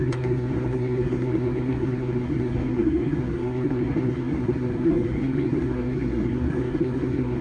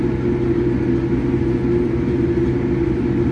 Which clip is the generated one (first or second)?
first